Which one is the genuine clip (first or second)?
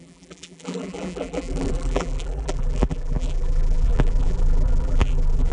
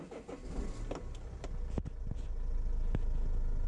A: second